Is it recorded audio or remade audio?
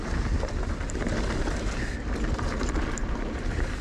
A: recorded